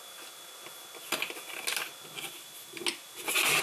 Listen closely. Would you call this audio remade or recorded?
recorded